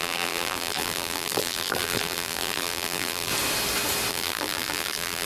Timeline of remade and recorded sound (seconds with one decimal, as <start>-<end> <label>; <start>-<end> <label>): 0.0-3.3 remade; 3.3-4.1 recorded; 4.1-5.3 remade